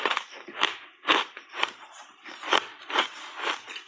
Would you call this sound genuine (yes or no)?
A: no